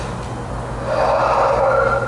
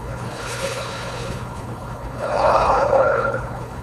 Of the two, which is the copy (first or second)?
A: second